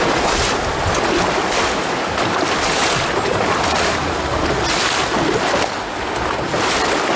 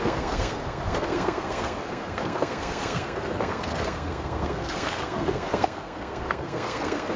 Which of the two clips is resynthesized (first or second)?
second